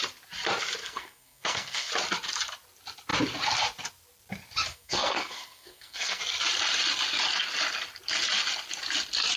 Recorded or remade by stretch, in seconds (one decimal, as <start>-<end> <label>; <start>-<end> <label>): 0.0-0.8 recorded; 0.8-1.9 remade; 1.9-4.7 recorded; 4.7-6.2 remade; 6.2-9.4 recorded